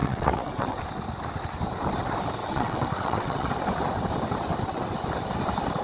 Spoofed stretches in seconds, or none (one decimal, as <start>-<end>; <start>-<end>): 0.0-0.8; 2.4-3.5